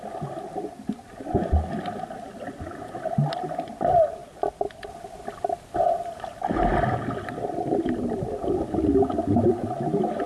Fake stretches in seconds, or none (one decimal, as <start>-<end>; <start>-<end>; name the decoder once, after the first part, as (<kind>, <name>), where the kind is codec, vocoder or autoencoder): none